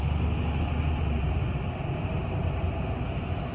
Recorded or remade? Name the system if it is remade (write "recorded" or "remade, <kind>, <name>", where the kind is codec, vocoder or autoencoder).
recorded